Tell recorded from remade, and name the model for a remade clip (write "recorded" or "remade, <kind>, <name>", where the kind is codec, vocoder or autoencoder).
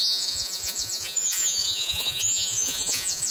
remade, vocoder, Vocos